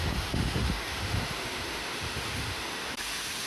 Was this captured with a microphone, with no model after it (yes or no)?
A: no